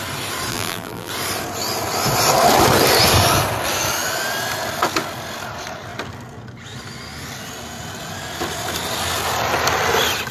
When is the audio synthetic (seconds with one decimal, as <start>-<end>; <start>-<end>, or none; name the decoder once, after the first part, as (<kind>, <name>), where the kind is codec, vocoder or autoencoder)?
0.5-1.1 (vocoder, BigVGAN v2)